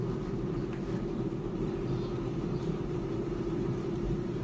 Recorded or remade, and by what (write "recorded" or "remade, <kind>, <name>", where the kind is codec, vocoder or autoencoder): remade, vocoder, BigVGAN v2